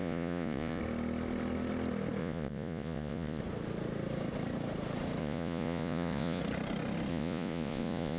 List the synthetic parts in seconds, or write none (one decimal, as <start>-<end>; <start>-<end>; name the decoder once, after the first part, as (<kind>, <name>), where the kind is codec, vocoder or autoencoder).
0.0-0.8 (vocoder, Vocos); 2.2-3.4; 5.2-6.4; 7.1-8.2